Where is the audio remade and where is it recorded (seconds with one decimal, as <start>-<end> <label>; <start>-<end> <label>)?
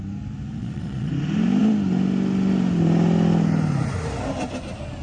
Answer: 0.0-0.6 recorded; 0.6-1.1 remade; 1.1-5.0 recorded